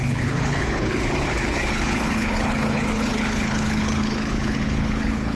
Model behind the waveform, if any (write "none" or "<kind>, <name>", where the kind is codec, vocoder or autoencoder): codec, HILCodec